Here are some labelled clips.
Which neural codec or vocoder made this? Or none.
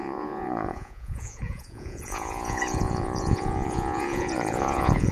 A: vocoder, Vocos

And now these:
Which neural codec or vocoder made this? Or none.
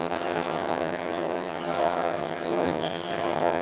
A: vocoder, HiFi-GAN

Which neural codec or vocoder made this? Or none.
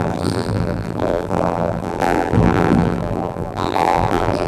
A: vocoder, BigVGAN v2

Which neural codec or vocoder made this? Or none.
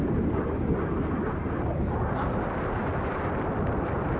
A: none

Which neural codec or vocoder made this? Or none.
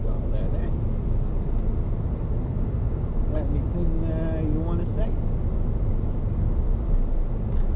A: none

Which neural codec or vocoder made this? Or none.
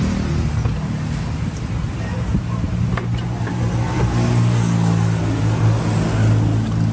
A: none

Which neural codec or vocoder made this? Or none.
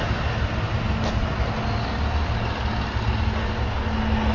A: none